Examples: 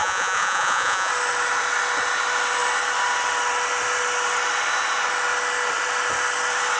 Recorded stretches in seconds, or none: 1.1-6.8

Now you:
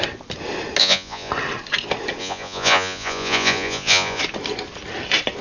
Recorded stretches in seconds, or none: 0.0-0.8; 1.3-2.2; 4.2-5.4

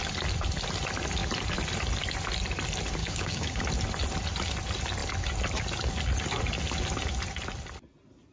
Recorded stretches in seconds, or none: 0.0-3.0; 3.6-8.3

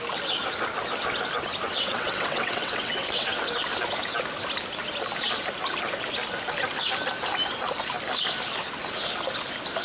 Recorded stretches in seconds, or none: 0.0-1.7; 3.4-9.8

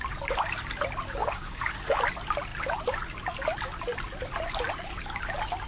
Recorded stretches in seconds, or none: 0.0-1.2; 2.0-5.7

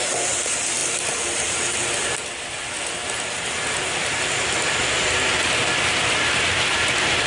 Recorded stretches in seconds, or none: 2.6-3.9